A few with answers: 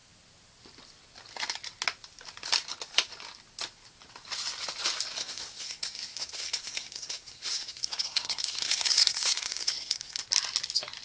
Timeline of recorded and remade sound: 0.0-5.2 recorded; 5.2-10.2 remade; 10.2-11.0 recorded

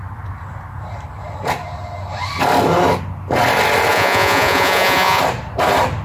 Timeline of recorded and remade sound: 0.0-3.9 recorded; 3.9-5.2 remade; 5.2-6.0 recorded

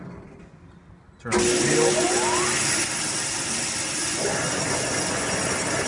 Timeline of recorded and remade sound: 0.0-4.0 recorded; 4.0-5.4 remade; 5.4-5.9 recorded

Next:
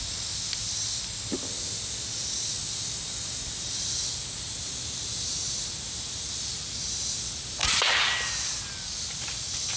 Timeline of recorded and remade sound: 0.0-9.8 recorded